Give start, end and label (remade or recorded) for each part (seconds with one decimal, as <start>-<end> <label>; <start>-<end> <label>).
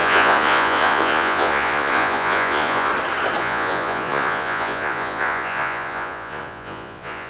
0.0-2.9 remade; 2.9-3.4 recorded; 3.4-7.3 remade